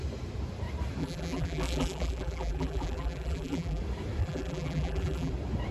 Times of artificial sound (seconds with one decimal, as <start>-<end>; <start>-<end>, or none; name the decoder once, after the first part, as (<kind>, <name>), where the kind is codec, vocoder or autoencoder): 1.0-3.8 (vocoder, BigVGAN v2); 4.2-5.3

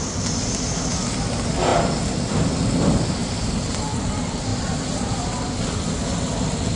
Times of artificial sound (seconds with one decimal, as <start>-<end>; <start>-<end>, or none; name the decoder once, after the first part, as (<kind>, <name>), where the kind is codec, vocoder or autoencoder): 3.2-4.1 (vocoder, BigVGAN v2); 4.5-5.2

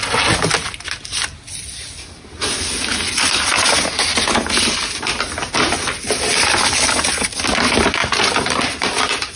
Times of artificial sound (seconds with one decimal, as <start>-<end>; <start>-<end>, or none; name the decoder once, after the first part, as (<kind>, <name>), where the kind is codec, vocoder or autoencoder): 8.0-9.4 (vocoder, BigVGAN v2)

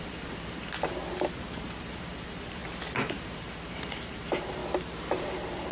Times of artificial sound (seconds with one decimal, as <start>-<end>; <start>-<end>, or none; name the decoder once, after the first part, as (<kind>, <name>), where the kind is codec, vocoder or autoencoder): 0.0-1.0 (vocoder, BigVGAN v2); 1.6-2.6; 3.1-4.6; 5.2-5.7

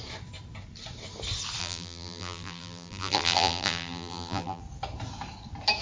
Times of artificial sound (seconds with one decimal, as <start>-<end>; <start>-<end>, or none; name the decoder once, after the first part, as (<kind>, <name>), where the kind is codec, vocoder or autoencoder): 1.6-4.6 (vocoder, BigVGAN v2)

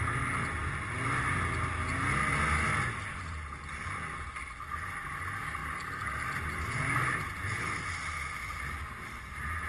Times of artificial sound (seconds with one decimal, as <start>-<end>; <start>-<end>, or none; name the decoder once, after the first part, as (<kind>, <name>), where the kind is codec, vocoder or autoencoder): none

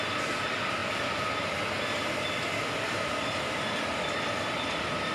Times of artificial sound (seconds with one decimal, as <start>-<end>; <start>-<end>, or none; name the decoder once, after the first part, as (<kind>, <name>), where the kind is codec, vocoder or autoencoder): none